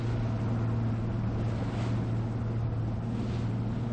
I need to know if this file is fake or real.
real